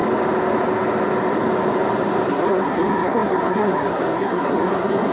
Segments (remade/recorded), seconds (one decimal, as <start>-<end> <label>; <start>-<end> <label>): 0.0-2.3 recorded; 2.3-5.1 remade